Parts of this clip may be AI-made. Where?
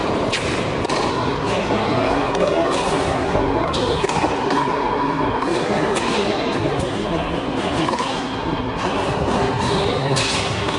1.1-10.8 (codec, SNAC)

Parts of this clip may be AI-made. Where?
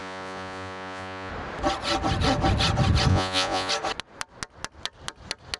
0.0-1.3 (vocoder, Vocos); 3.1-3.7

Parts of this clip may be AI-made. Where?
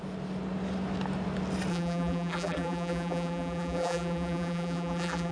1.7-5.3 (vocoder, BigVGAN v2)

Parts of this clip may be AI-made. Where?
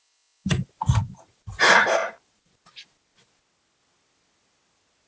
none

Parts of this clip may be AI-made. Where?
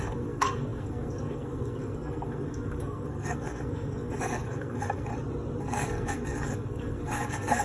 0.0-5.1 (codec, SNAC); 5.6-7.6